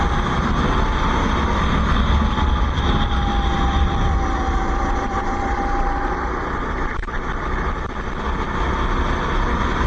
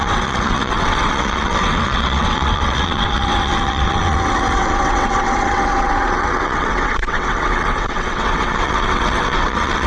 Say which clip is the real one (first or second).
first